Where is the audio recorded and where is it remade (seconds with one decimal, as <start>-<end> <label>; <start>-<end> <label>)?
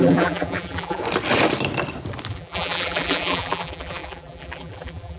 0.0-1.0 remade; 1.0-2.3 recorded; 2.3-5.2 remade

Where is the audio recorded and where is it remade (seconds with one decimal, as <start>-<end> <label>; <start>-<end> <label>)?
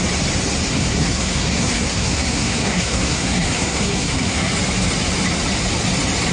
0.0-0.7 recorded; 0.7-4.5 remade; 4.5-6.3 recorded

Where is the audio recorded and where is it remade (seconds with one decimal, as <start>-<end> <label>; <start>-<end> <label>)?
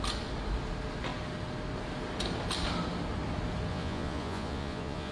0.0-3.7 recorded; 3.7-5.1 remade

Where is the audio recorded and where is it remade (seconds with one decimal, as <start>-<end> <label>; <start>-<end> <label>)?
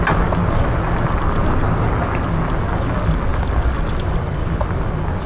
0.0-5.3 recorded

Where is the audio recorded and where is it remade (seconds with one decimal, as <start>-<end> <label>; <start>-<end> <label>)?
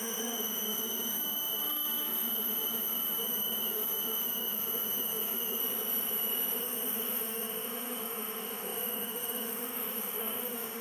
0.0-5.6 remade; 5.6-6.6 recorded; 6.6-10.8 remade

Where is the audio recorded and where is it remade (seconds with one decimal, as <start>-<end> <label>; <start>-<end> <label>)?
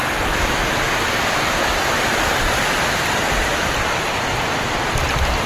0.0-3.3 remade; 3.3-5.5 recorded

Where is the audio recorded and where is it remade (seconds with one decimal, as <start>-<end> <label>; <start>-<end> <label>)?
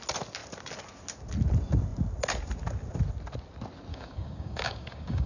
0.0-3.9 recorded; 3.9-5.3 remade